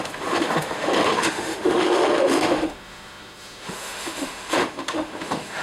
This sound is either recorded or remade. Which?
remade